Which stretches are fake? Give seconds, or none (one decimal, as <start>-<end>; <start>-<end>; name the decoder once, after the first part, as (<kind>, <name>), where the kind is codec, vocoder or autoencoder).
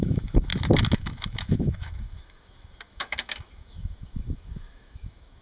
0.0-0.5 (autoencoder, DAC-VAE); 1.0-5.4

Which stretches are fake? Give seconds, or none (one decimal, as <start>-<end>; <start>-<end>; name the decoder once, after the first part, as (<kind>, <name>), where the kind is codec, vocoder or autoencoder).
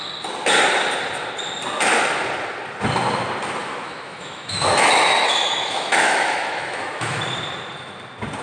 3.6-7.2 (autoencoder, DAC-VAE)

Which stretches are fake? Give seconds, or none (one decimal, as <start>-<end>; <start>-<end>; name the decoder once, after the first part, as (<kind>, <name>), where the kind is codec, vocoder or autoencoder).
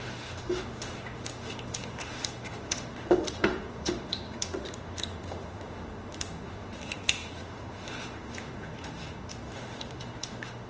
0.0-10.7 (autoencoder, DAC-VAE)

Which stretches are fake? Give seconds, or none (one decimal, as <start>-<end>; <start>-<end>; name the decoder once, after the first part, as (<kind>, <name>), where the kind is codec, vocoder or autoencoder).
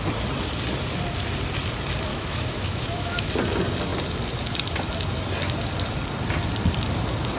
2.1-3.3 (autoencoder, DAC-VAE)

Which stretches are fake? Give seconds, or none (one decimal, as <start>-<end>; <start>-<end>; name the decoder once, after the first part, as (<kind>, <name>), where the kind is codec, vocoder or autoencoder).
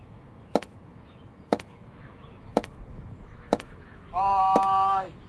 0.0-5.3 (autoencoder, DAC-VAE)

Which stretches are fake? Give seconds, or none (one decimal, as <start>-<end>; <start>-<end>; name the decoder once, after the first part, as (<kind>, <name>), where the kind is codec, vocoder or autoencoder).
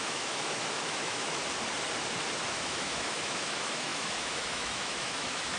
0.0-1.4 (autoencoder, DAC-VAE); 2.5-5.6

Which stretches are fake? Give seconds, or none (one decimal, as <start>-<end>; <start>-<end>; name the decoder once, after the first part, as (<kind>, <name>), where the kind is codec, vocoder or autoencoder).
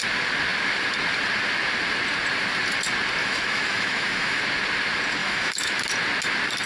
3.2-4.4 (autoencoder, DAC-VAE); 5.2-5.8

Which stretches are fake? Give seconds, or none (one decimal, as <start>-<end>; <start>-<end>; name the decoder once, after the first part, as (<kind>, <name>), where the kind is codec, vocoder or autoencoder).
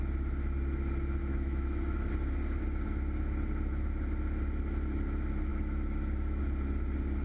1.2-2.1 (autoencoder, DAC-VAE); 5.5-6.4